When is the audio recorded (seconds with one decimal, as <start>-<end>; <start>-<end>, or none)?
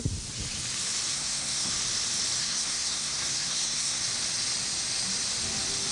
0.0-1.1; 1.7-2.4; 4.0-5.9